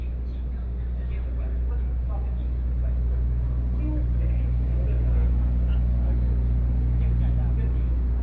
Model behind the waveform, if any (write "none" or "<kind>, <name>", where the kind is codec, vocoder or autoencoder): none